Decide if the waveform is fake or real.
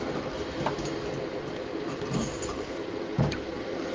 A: fake